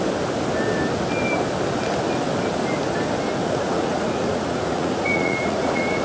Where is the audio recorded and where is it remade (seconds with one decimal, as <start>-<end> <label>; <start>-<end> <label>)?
0.0-3.4 recorded; 3.4-6.0 remade